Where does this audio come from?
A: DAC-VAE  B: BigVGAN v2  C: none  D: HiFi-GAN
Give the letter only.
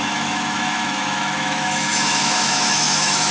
A